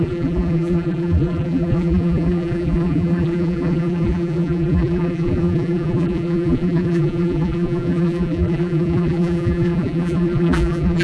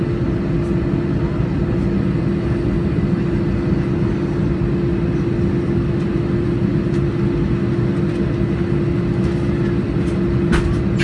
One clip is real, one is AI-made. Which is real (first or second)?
second